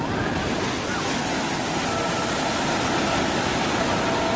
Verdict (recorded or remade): recorded